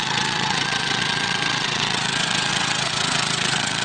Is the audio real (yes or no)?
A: no